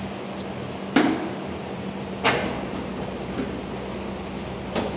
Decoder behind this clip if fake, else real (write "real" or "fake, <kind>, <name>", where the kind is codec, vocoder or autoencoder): real